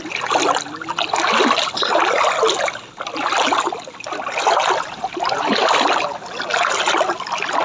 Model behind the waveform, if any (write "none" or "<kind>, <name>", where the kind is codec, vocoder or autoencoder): none